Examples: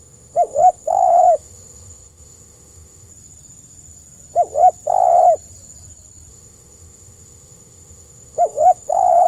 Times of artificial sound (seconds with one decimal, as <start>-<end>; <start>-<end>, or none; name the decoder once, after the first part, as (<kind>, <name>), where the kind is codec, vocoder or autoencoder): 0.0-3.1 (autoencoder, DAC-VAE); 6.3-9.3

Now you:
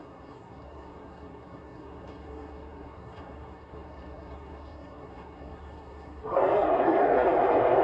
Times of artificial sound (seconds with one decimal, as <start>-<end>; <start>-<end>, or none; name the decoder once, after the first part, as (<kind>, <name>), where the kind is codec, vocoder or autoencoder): 0.0-7.8 (codec, SNAC)

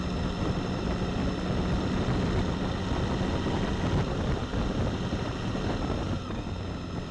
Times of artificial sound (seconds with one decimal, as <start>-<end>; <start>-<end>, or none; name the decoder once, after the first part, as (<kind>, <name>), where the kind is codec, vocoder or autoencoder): none

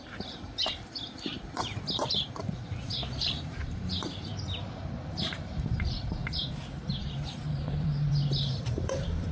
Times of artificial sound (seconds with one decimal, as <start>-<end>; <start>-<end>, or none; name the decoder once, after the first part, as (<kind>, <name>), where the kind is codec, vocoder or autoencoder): 0.0-4.3 (vocoder, BigVGAN v2); 5.2-9.3

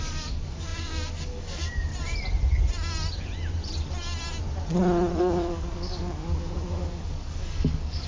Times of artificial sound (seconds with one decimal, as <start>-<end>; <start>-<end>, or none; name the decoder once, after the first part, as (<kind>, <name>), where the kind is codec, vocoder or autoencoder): 0.0-1.9 (codec, DAC); 5.2-8.1

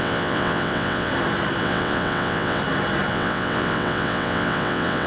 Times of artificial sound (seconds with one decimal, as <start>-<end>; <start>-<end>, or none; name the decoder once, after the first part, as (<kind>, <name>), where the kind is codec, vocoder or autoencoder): 0.0-1.1 (vocoder, WaveNeXt); 1.6-2.6; 3.1-5.1

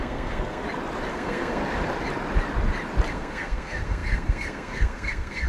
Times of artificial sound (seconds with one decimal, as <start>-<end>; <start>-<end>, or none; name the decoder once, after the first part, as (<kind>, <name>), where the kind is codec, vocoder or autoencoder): 0.0-0.6 (codec, SNAC); 1.1-1.6; 3.1-5.5